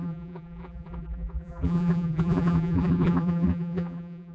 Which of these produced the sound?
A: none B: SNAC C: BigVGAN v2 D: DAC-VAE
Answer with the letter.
C